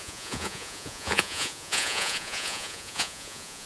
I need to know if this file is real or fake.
fake